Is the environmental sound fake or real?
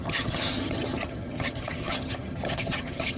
fake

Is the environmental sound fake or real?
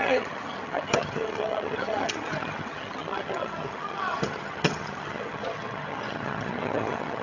fake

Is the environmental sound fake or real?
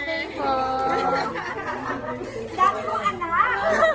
real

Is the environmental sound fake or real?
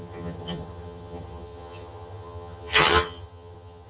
fake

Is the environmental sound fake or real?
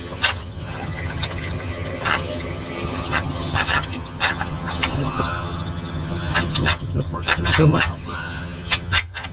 fake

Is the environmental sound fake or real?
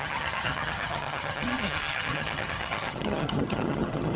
fake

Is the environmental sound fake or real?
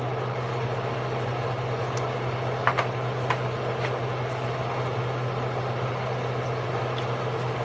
real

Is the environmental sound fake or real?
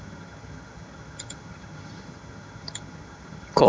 fake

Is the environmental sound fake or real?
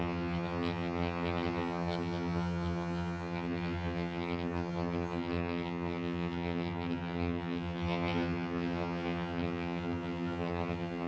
fake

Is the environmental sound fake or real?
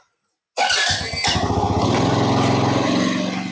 real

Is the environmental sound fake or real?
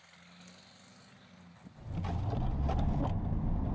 real